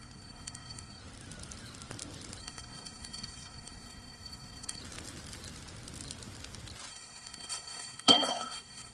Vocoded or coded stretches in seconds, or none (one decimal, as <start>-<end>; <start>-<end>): 0.0-1.0; 2.4-4.8; 6.9-8.9